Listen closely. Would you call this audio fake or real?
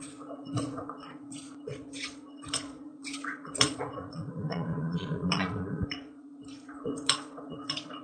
fake